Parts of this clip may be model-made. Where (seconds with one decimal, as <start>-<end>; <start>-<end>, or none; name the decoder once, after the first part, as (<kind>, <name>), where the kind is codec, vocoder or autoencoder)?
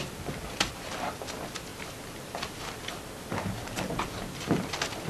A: none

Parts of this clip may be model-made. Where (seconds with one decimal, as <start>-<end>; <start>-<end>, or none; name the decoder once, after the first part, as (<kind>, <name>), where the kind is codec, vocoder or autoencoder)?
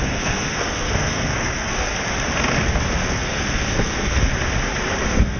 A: 0.0-1.9 (codec, SNAC); 3.1-4.3; 5.0-5.4